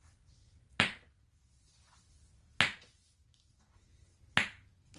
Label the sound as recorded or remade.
recorded